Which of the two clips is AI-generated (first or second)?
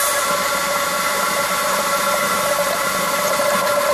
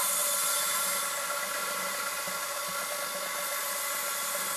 first